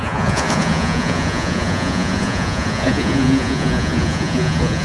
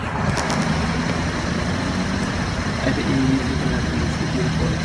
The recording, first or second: second